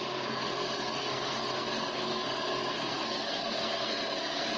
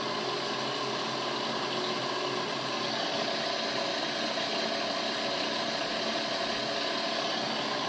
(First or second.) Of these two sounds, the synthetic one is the first